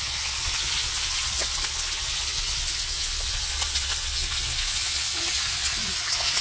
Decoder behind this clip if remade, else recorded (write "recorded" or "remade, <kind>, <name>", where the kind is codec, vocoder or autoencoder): remade, vocoder, Vocos